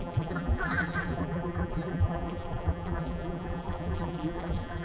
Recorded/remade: remade